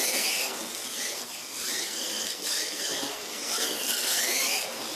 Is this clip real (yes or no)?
no